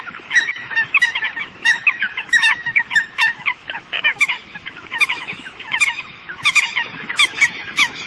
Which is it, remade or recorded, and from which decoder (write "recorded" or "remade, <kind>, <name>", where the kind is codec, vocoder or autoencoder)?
remade, autoencoder, DAC-VAE